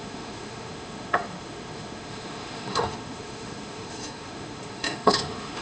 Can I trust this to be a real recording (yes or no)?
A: no